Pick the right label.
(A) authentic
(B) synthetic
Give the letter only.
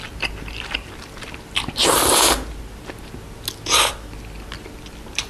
A